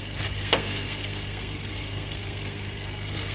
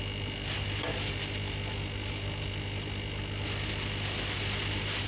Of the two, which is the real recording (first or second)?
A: second